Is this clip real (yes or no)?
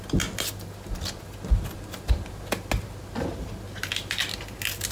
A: yes